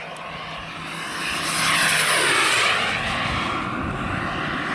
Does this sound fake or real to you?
real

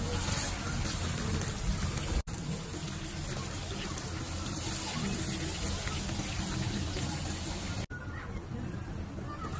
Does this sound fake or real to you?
real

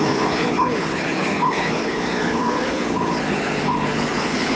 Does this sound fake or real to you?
fake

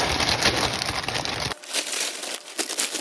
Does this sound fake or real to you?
real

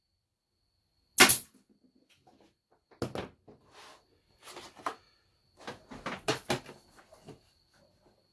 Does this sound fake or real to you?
real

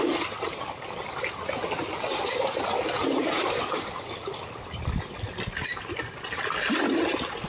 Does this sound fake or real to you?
real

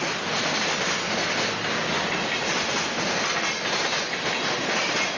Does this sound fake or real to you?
real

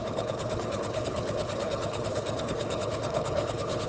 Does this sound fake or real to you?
fake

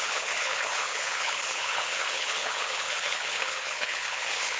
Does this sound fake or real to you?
fake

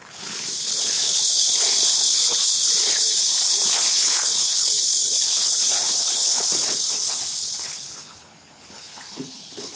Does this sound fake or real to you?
fake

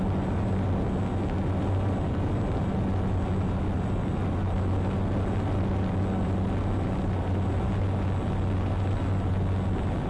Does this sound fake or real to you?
real